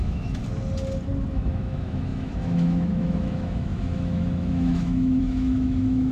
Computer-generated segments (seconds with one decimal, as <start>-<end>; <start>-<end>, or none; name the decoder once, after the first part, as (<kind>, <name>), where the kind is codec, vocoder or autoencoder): 0.0-0.4 (autoencoder, DAC-VAE); 1.3-6.1